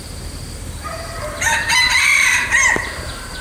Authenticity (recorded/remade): remade